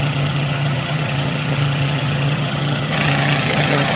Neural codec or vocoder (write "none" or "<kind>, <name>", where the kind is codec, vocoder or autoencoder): vocoder, HiFi-GAN